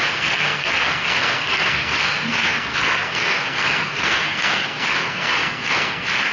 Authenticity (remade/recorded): remade